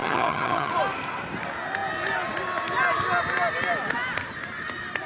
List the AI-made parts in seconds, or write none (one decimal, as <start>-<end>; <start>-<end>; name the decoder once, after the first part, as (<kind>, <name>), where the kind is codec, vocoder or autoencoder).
0.0-0.7 (vocoder, HiFi-GAN)